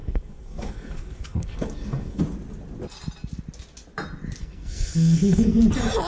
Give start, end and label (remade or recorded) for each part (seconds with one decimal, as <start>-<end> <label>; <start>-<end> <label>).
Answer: 0.0-2.2 remade; 2.2-4.4 recorded; 4.4-5.6 remade; 5.6-6.1 recorded